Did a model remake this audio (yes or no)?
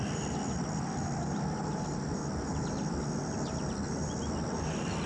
no